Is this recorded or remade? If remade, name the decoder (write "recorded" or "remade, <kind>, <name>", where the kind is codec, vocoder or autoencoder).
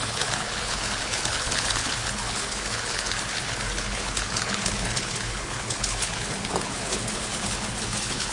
remade, codec, HILCodec